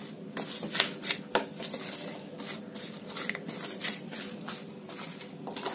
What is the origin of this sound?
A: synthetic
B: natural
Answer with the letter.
B